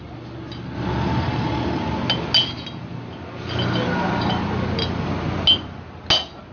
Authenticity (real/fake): real